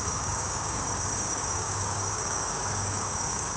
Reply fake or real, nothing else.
fake